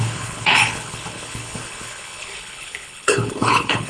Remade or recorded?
remade